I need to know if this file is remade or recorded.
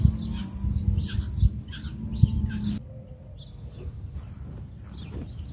recorded